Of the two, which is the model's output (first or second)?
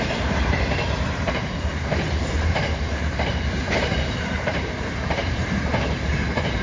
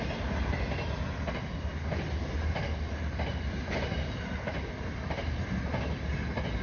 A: first